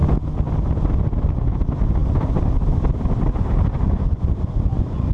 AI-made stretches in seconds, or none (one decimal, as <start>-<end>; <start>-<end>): none